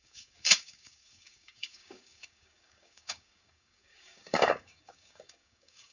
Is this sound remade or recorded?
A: remade